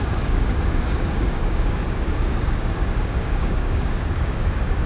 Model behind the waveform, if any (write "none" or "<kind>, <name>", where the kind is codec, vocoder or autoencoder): codec, DAC